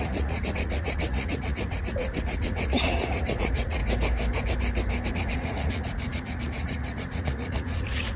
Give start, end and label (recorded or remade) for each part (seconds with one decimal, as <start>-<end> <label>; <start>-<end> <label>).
0.0-3.8 remade; 3.8-5.1 recorded; 5.1-8.2 remade